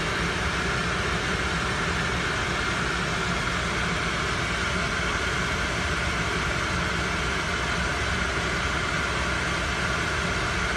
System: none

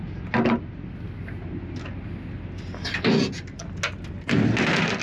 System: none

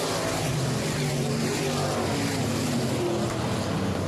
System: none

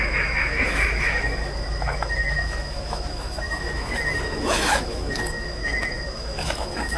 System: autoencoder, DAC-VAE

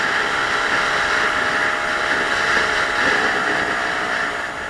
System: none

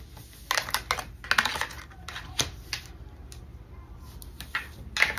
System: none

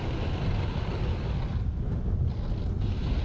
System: none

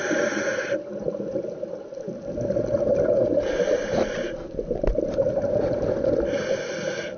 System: none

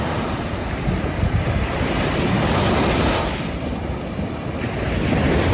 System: none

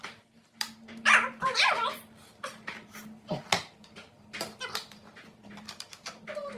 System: vocoder, BigVGAN v2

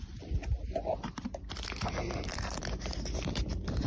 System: vocoder, BigVGAN v2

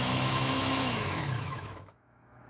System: autoencoder, DAC-VAE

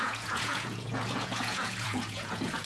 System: vocoder, Vocos